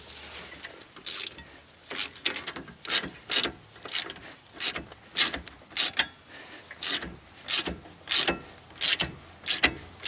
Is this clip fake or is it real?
real